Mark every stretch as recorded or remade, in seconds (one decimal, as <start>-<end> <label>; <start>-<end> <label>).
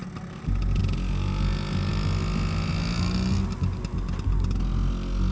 0.0-5.3 recorded